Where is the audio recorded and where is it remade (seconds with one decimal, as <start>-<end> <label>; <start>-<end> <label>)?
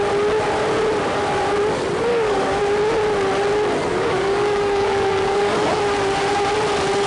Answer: 0.0-2.1 recorded; 2.1-2.6 remade; 2.6-3.9 recorded; 3.9-5.8 remade; 5.8-7.1 recorded